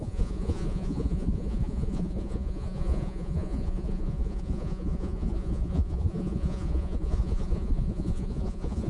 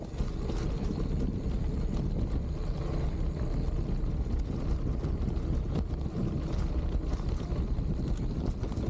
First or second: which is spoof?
first